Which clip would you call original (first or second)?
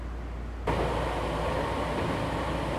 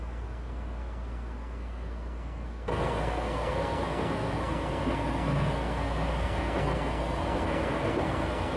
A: first